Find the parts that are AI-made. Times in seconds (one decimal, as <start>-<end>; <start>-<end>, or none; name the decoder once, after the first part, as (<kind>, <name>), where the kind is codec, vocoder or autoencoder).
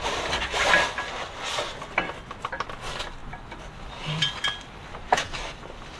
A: none